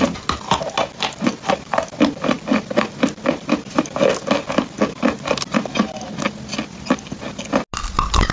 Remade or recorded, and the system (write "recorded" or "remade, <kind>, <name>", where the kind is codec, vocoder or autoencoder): recorded